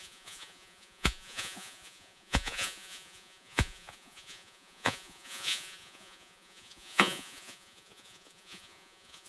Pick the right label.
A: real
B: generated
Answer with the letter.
B